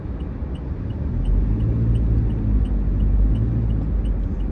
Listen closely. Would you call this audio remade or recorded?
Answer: recorded